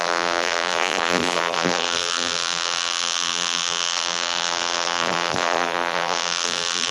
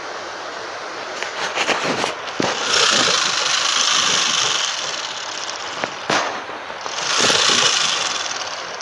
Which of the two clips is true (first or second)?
second